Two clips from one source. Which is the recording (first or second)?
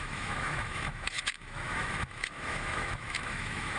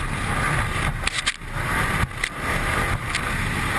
second